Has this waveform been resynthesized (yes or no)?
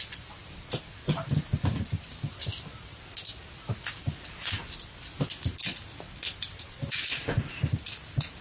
no